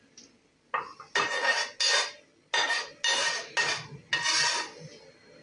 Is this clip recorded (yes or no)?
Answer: yes